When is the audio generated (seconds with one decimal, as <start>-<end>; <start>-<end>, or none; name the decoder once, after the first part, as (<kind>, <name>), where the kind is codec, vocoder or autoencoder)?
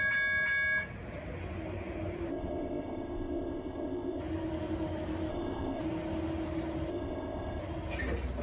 2.3-4.2 (codec, ZipCodec); 5.3-5.8; 6.9-7.6